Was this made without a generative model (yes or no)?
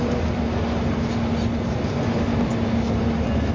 yes